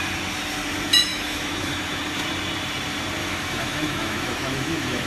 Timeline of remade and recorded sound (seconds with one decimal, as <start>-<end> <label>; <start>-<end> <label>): 0.0-1.1 recorded; 1.1-2.0 remade; 2.0-3.2 recorded; 3.2-5.1 remade